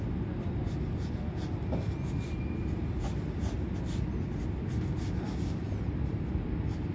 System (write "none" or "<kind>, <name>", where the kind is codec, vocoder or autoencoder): none